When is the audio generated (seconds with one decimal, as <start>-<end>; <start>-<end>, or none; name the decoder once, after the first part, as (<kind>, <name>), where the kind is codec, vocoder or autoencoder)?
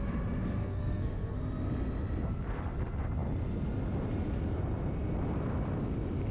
0.6-1.4 (codec, SNAC)